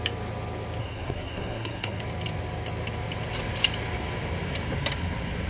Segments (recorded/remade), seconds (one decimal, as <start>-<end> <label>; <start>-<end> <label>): 0.0-0.8 recorded; 0.8-2.0 remade; 2.0-5.5 recorded